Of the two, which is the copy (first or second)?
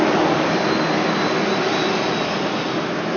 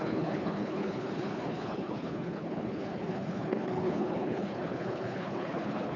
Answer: second